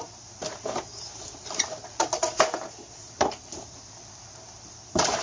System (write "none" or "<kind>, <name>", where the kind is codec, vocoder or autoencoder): vocoder, BigVGAN v2